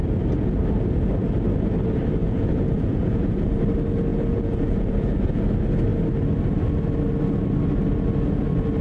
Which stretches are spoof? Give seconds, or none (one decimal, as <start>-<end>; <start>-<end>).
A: 2.2-3.6; 4.1-5.4